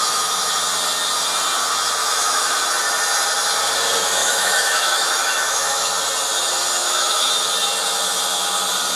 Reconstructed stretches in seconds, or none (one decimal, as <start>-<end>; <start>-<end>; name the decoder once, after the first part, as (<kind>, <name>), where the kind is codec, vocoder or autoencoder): 0.0-0.5 (autoencoder, DAC-VAE); 2.0-2.6; 4.2-5.9; 6.8-7.3